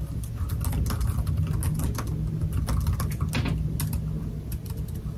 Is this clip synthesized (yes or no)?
no